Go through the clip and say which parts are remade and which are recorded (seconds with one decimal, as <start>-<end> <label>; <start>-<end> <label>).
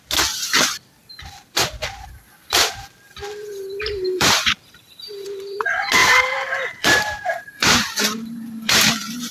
0.0-1.0 recorded; 1.0-5.6 remade; 5.6-6.0 recorded; 6.0-8.9 remade; 8.9-9.3 recorded